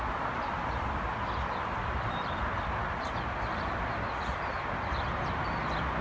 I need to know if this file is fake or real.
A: real